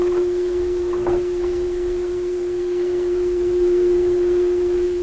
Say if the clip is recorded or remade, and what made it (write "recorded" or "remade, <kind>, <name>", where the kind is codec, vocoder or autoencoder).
remade, codec, SNAC